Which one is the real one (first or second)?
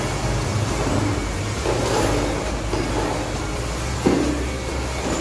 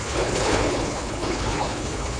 first